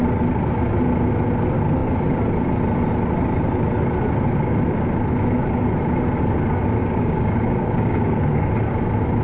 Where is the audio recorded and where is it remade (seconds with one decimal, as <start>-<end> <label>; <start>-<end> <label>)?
0.0-6.8 recorded; 6.8-8.5 remade; 8.5-9.2 recorded